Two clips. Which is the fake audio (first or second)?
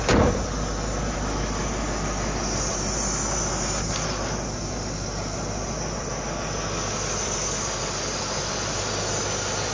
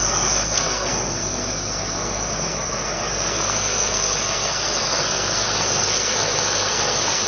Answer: second